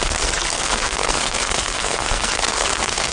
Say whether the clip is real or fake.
fake